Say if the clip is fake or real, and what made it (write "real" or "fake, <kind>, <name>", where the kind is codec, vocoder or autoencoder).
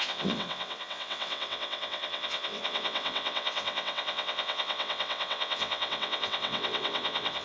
fake, vocoder, WaveNeXt